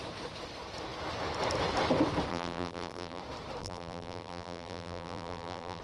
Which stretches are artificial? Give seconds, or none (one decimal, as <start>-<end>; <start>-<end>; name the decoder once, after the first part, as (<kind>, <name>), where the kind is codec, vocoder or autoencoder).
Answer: 2.3-3.2 (vocoder, BigVGAN v2); 3.6-5.8

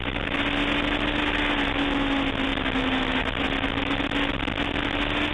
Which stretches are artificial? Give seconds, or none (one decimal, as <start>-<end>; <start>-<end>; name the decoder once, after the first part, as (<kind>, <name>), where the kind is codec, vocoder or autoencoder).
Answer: none

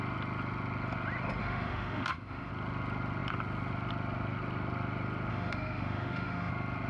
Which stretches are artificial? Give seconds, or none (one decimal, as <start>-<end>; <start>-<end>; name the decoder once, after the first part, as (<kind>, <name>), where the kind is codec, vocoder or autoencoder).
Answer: 1.4-2.5 (autoencoder, DAC-VAE); 5.3-6.5

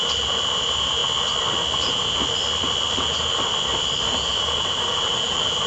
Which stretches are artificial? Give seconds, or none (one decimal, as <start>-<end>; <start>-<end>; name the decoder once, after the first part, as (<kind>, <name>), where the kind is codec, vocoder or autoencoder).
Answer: 0.0-1.0 (vocoder, BigVGAN v2); 4.4-5.7

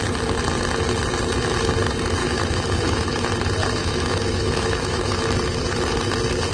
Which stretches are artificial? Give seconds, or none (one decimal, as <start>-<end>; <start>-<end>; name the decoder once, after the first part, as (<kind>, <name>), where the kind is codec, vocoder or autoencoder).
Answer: 2.2-3.3 (autoencoder, DAC-VAE); 3.8-5.1

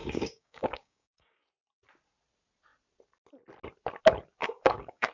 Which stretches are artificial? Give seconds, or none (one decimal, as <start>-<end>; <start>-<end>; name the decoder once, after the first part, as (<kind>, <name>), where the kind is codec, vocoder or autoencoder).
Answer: 0.0-1.4 (codec, DAC); 4.4-5.1